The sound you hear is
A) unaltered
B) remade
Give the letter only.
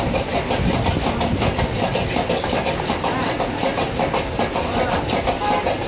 A